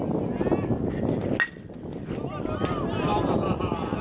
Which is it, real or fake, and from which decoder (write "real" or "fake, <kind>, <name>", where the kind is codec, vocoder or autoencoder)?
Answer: real